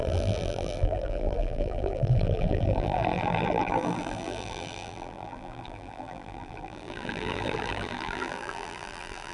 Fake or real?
fake